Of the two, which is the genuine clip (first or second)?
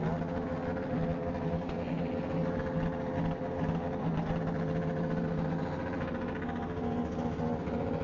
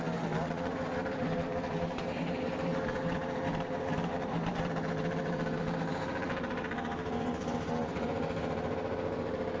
first